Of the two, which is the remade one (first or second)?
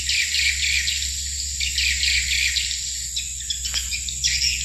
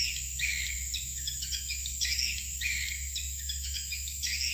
second